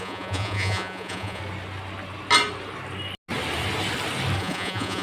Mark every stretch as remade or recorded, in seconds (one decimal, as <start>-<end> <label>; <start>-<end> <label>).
0.0-1.4 remade; 1.4-4.4 recorded; 4.4-5.0 remade